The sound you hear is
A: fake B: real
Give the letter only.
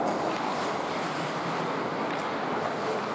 B